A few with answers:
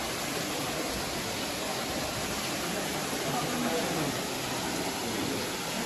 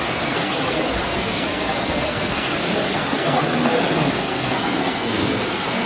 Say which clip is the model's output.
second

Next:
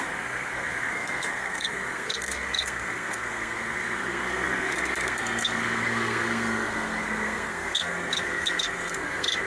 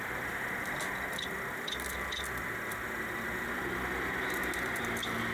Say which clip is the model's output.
first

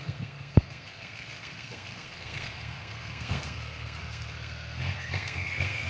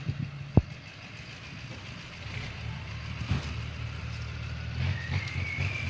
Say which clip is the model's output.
first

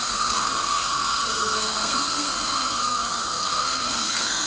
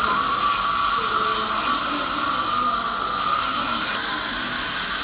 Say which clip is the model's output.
first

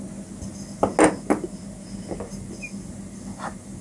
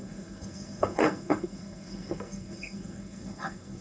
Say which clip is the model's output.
second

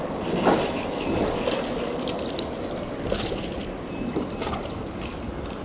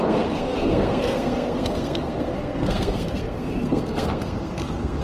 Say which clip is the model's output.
second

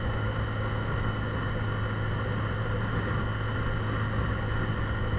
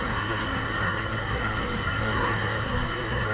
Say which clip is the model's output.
second